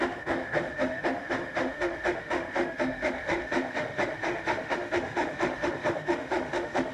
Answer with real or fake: fake